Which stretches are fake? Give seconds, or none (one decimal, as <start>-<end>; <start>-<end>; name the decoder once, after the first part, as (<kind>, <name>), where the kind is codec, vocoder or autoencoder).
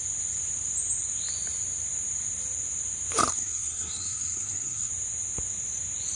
3.3-4.9 (codec, SNAC)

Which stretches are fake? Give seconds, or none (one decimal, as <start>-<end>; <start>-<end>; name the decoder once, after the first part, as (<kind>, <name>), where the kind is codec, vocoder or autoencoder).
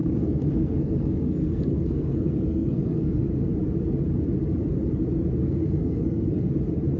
0.0-3.2 (codec, SNAC); 5.4-6.5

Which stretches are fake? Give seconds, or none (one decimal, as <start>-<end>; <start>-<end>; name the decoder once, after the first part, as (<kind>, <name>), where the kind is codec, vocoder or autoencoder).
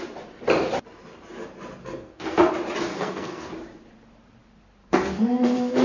1.8-2.5 (codec, SNAC); 2.9-3.5; 4.8-5.8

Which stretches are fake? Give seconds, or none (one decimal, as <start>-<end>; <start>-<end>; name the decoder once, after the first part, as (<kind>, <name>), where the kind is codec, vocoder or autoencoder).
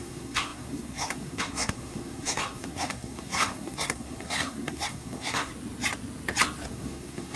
0.0-5.5 (codec, SNAC); 6.7-7.4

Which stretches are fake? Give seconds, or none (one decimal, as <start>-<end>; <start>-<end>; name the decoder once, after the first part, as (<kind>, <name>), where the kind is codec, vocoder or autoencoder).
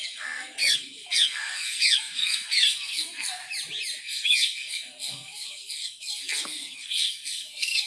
0.0-3.4 (codec, SNAC); 4.0-7.9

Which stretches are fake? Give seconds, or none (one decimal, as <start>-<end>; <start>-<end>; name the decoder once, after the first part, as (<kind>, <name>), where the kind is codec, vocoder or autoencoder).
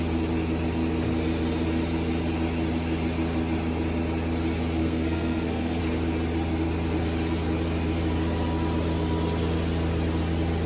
4.8-5.8 (codec, SNAC)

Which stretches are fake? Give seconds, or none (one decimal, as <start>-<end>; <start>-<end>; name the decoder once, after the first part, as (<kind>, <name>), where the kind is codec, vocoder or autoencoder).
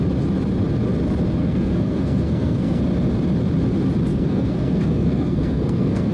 1.4-2.8 (codec, SNAC); 4.1-6.1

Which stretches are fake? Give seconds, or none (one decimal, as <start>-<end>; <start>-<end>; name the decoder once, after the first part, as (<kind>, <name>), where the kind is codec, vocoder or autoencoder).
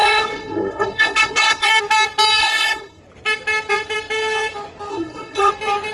0.0-1.7 (codec, SNAC); 2.4-3.0; 4.9-5.5